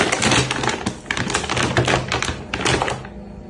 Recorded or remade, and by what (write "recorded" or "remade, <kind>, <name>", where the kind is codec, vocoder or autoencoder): recorded